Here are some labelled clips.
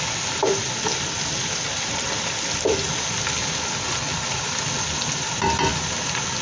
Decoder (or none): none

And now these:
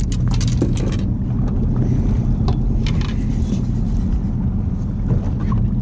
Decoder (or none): none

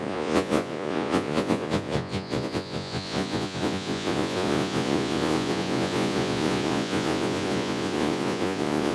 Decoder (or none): vocoder, Vocos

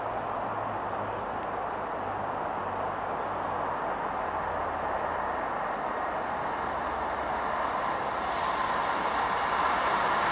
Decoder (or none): none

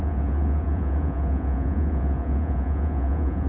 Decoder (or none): vocoder, Vocos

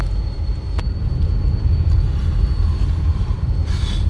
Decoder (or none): none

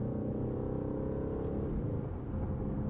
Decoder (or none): none